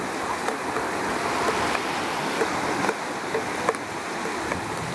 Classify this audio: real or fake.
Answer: real